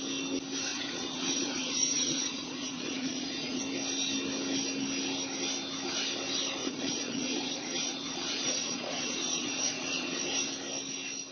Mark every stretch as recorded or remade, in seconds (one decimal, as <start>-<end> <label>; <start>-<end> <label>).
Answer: 0.0-0.7 recorded; 0.7-3.6 remade; 3.6-6.6 recorded; 6.6-10.2 remade; 10.2-11.3 recorded